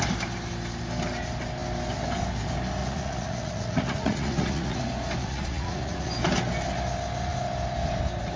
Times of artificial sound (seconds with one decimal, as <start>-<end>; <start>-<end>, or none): 2.8-4.8; 5.2-6.1